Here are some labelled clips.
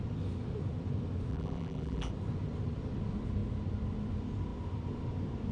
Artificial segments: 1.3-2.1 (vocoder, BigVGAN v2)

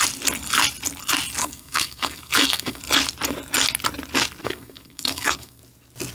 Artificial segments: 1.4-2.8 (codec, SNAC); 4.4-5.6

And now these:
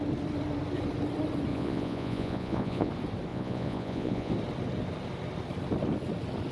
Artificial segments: 1.5-2.9 (vocoder, Vocos); 3.3-4.3